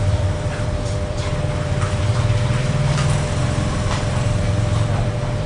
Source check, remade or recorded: remade